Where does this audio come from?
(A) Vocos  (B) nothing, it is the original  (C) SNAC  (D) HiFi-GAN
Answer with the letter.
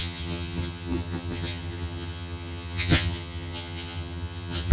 D